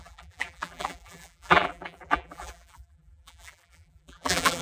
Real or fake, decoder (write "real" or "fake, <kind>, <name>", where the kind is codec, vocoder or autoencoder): fake, vocoder, BigVGAN v2